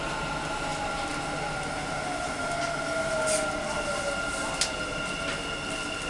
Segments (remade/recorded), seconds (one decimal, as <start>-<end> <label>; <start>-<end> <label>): 0.0-6.1 recorded